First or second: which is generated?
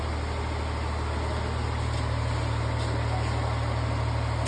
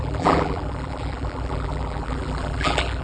second